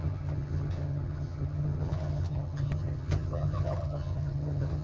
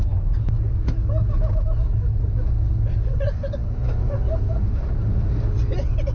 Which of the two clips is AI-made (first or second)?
first